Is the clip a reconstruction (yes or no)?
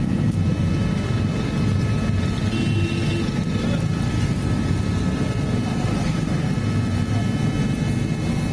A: no